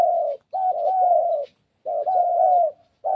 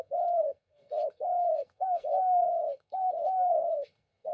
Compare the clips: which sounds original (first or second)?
first